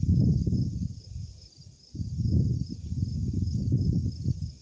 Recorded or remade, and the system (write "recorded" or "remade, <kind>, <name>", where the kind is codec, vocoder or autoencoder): recorded